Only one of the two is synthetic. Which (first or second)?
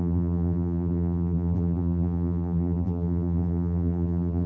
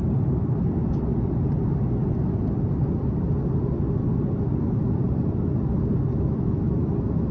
first